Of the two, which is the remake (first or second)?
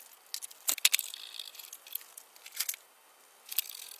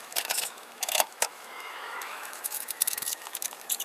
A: second